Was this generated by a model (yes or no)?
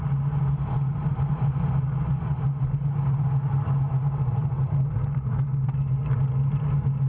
no